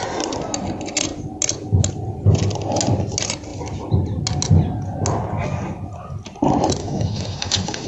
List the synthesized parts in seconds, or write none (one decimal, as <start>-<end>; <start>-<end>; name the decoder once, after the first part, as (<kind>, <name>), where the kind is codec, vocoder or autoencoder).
6.8-7.9 (autoencoder, DAC-VAE)